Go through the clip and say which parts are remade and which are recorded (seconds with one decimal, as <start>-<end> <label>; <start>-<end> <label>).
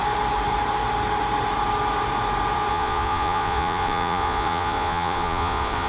0.0-2.7 recorded; 2.7-5.9 remade